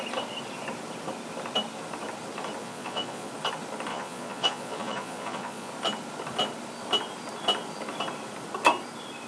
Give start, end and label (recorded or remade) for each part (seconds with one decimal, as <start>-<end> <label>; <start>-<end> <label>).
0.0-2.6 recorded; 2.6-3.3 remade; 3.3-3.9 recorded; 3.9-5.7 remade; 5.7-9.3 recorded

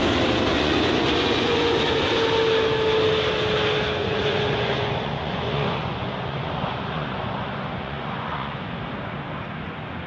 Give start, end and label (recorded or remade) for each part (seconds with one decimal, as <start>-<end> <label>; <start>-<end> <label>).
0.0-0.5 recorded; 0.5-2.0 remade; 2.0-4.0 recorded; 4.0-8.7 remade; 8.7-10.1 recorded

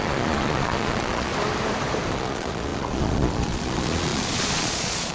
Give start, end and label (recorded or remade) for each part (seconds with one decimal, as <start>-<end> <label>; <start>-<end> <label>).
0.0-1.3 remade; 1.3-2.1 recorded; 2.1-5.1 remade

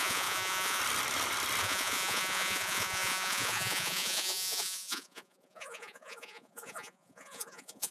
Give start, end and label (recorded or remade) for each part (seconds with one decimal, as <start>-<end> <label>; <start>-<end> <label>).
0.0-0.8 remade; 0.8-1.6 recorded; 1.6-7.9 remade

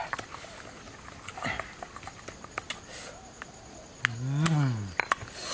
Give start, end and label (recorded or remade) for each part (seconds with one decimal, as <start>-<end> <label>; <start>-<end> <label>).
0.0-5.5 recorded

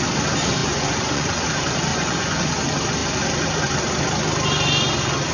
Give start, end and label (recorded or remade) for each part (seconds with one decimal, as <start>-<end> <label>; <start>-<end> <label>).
0.0-0.6 recorded; 0.6-1.5 remade; 1.5-1.9 recorded; 1.9-2.5 remade; 2.5-5.3 recorded

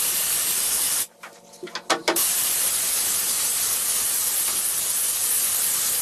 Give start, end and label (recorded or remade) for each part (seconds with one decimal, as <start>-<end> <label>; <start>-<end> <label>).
0.0-6.0 recorded